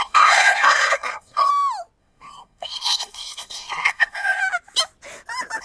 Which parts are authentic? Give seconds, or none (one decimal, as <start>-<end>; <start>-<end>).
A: 1.5-2.0; 4.4-5.6